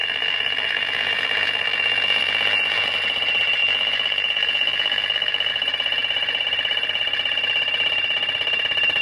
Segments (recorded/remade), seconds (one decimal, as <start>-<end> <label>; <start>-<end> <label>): 0.0-3.0 remade; 3.0-3.6 recorded; 3.6-5.5 remade; 5.5-9.0 recorded